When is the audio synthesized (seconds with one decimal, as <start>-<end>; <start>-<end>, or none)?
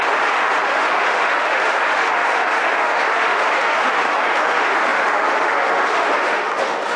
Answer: 0.0-7.0